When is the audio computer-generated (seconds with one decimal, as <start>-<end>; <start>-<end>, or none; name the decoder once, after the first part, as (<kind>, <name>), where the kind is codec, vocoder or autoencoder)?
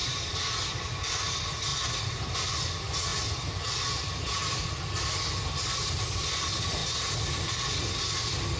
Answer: 0.0-1.1 (vocoder, BigVGAN v2); 1.7-2.7